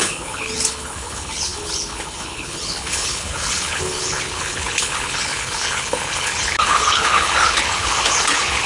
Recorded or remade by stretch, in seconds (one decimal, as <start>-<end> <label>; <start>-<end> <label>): 0.0-8.7 remade